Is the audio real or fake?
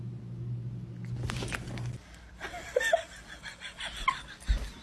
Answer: real